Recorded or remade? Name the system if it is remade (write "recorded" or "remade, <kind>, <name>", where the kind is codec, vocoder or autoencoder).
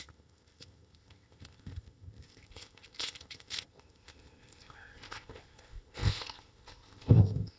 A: remade, codec, ZipCodec